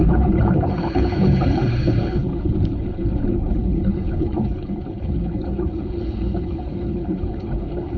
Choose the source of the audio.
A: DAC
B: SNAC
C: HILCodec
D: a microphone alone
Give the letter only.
C